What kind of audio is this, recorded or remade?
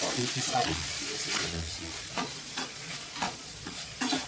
remade